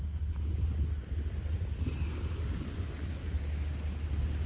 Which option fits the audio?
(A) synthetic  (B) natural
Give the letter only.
B